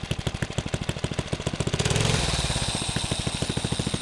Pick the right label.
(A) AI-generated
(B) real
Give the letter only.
B